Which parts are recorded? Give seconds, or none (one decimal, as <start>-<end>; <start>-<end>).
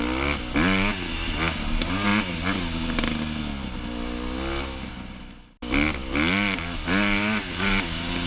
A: 0.0-8.3